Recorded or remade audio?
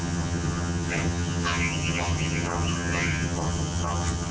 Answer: remade